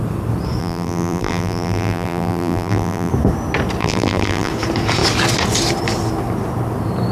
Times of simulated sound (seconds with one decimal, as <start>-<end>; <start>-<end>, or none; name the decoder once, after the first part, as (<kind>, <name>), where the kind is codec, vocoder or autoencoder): 0.6-3.1 (vocoder, BigVGAN v2); 3.8-4.5